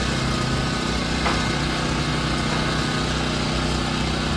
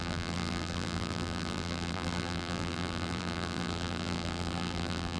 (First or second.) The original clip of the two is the first